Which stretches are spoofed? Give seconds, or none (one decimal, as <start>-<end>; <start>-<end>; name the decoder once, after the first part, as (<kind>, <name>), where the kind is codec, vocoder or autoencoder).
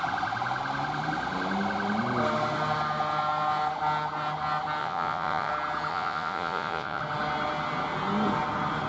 4.8-5.5 (vocoder, Vocos); 5.9-7.0